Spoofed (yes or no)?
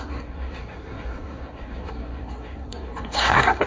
yes